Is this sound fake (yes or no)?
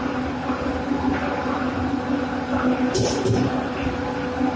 no